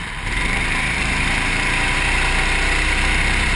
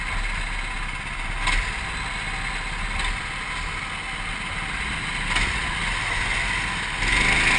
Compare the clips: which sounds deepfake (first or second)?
first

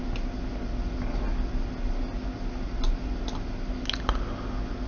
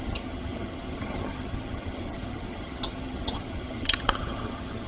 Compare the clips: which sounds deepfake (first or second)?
second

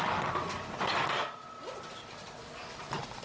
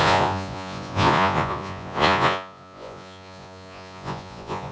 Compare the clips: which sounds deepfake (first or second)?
second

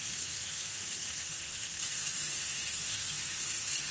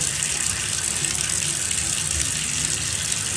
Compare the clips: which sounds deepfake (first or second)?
first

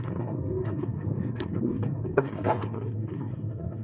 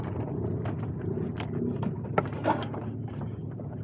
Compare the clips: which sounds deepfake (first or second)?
first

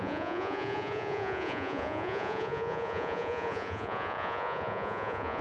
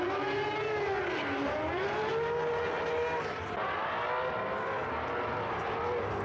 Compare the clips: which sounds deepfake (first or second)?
first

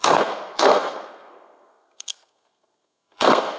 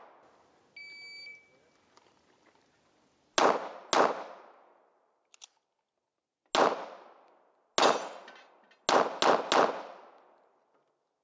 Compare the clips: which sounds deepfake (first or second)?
first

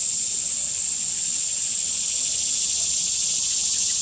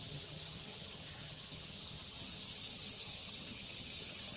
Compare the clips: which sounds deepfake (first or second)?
second